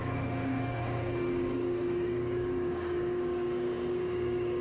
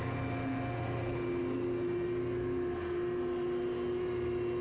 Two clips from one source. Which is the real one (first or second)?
second